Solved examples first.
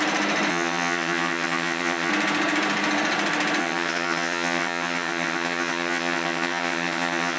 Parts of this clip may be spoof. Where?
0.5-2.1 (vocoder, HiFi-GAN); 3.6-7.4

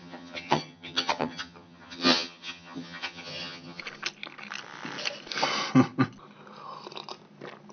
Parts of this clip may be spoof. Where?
0.0-3.8 (vocoder, HiFi-GAN)

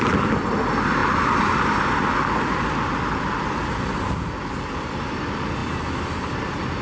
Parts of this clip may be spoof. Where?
none

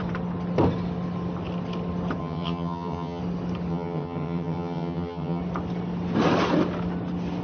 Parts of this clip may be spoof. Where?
2.2-3.2 (vocoder, HiFi-GAN); 3.7-5.4

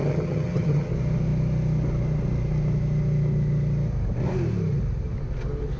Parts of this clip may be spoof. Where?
0.0-0.9 (vocoder, HiFi-GAN)